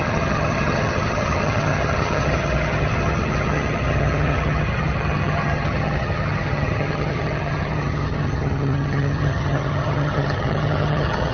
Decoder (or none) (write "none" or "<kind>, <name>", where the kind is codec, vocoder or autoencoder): vocoder, HiFi-GAN